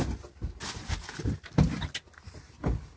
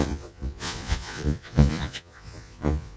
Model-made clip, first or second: second